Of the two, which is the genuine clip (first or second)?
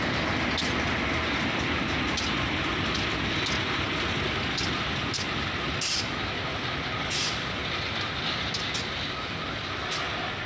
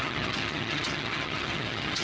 first